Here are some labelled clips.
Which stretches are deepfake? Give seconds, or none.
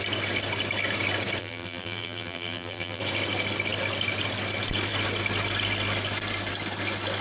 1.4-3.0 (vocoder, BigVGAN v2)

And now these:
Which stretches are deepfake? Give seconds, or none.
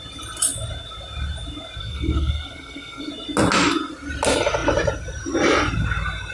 1.8-3.1 (codec, SNAC)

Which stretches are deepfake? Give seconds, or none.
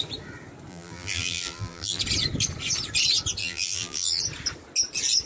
0.7-2.0 (vocoder, BigVGAN v2); 3.4-4.2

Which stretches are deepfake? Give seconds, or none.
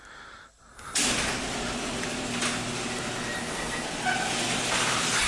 3.4-3.9 (codec, SNAC)